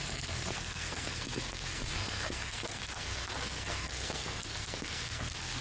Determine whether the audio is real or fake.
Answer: fake